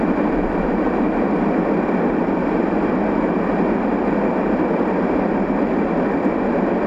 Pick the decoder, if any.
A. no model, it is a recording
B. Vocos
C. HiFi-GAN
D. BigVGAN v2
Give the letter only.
A